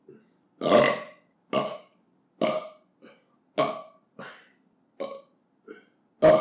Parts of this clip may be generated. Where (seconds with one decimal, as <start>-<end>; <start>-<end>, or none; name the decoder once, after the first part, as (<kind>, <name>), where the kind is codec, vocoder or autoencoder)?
none